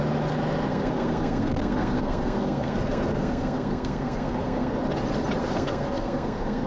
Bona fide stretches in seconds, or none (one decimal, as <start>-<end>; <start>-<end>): 0.0-0.7; 4.7-5.4

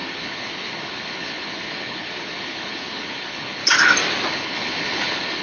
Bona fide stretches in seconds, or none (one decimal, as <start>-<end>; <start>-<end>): 3.6-4.3

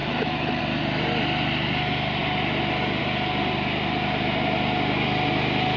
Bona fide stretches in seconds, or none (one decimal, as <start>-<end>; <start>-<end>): 0.6-5.8

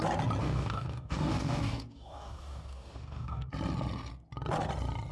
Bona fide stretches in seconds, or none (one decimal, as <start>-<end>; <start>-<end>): 0.0-0.4; 3.5-5.1

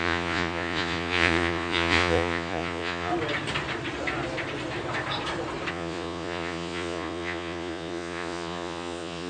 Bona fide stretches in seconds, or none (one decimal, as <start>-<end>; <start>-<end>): 3.1-5.7

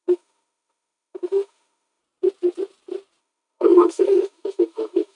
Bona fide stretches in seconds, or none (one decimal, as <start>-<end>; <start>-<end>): 2.0-3.2

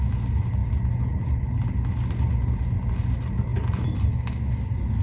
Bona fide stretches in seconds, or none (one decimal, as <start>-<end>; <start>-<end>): 0.0-5.0

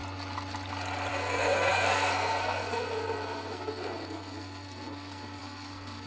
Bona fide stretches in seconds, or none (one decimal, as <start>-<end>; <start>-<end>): 0.0-1.1